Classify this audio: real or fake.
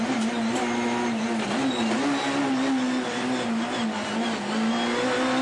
real